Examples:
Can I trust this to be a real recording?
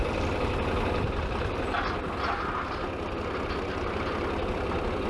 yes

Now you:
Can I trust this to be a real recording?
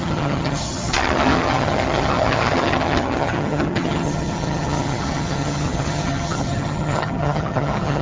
no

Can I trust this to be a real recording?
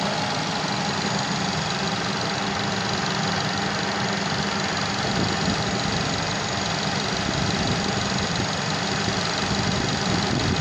yes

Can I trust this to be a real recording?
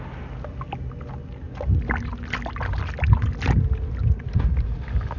yes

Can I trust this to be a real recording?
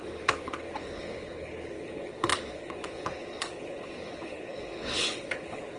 no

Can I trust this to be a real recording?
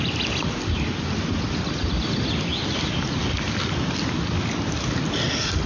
yes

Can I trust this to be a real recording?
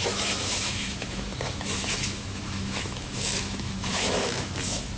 no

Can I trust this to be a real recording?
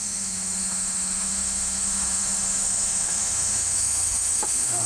no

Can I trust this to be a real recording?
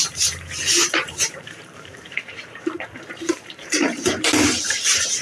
no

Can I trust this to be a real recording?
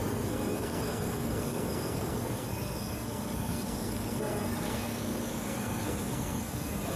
no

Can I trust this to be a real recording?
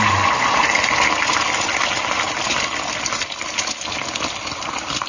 yes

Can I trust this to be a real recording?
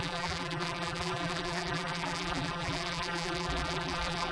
no